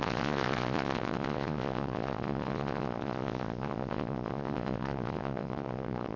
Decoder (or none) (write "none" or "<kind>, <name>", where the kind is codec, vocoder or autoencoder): vocoder, Vocos